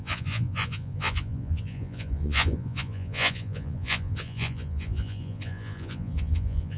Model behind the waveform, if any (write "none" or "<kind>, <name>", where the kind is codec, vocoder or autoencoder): vocoder, Vocos